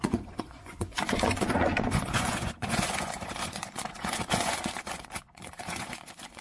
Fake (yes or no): yes